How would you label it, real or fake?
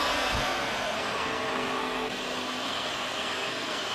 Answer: fake